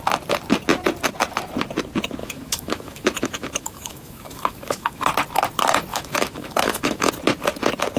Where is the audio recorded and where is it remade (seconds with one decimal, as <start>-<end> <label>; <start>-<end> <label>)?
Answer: 0.0-2.2 recorded; 2.2-5.0 remade; 5.0-5.9 recorded; 5.9-7.1 remade; 7.1-8.0 recorded